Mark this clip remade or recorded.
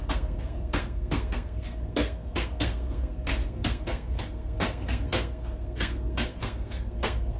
remade